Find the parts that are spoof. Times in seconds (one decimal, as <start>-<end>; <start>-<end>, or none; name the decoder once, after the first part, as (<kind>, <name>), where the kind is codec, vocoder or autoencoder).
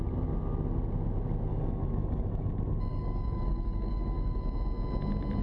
1.5-2.5 (codec, DAC); 2.9-4.4